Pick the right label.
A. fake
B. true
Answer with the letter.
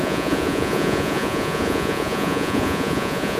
A